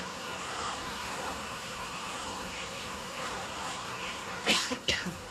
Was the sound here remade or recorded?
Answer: remade